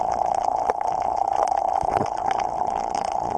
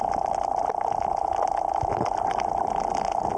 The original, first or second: second